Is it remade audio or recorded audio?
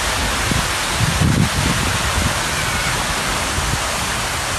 recorded